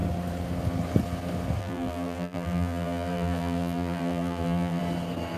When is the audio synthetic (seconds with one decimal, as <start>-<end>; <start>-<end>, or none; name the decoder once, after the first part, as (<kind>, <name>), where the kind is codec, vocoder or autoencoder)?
1.6-4.8 (vocoder, BigVGAN v2)

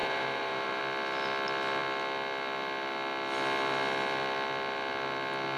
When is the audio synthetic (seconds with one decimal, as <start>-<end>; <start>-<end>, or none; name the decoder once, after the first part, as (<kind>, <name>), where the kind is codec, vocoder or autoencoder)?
0.0-0.8 (vocoder, BigVGAN v2)

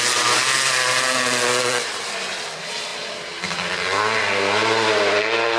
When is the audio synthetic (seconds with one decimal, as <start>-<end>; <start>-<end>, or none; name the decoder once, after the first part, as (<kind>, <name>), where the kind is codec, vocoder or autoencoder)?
0.0-2.9 (vocoder, BigVGAN v2); 4.2-5.6

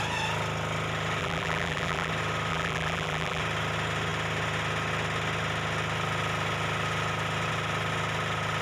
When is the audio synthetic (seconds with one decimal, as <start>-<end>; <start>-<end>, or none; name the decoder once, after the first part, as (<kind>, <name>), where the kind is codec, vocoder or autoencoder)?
1.2-2.1 (vocoder, BigVGAN v2); 2.5-3.4

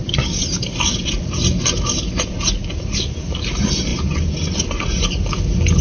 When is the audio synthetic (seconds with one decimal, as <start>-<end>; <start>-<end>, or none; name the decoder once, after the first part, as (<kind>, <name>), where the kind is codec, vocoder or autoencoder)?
0.4-1.6 (vocoder, BigVGAN v2)